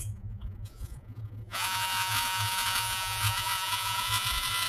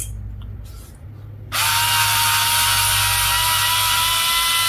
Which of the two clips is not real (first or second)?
first